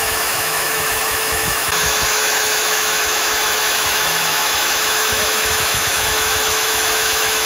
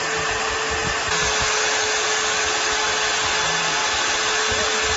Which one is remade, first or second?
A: first